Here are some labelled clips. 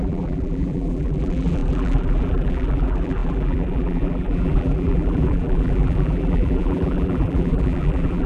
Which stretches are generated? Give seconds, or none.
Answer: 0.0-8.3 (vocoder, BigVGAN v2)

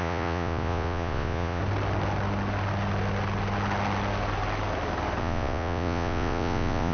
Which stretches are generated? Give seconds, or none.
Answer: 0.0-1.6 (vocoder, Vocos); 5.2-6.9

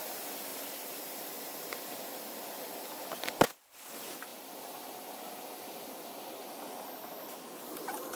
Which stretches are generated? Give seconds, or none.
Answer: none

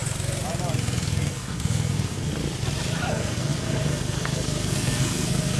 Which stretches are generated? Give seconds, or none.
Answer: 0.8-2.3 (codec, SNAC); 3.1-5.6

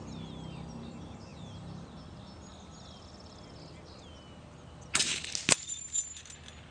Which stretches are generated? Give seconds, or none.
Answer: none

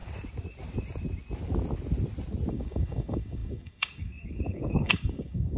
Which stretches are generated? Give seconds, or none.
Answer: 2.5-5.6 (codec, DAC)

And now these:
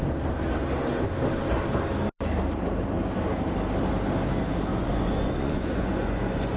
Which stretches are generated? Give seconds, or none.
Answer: 4.7-6.6 (vocoder, Vocos)